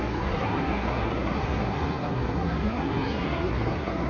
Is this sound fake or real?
fake